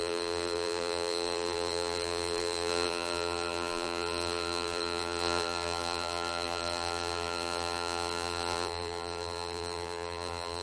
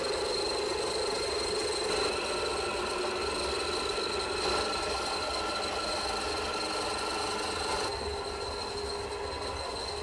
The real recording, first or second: second